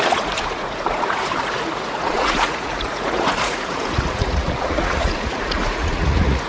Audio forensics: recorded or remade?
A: remade